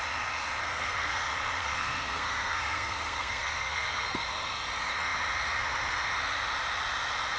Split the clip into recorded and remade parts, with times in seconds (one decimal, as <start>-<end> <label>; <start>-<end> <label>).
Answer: 0.0-0.7 recorded; 0.7-1.2 remade; 1.2-1.6 recorded; 1.6-4.5 remade; 4.5-7.4 recorded